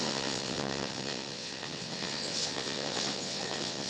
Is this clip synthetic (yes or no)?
yes